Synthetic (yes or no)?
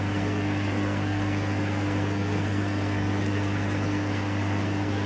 yes